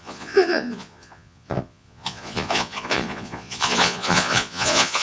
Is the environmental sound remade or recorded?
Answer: remade